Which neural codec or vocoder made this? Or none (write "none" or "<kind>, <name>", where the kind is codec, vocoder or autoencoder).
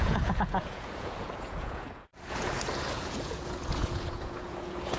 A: vocoder, Vocos